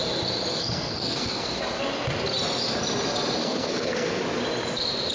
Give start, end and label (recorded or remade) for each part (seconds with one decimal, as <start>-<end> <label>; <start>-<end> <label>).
0.0-0.5 recorded; 0.5-1.6 remade; 1.6-3.4 recorded; 3.4-4.2 remade; 4.2-5.1 recorded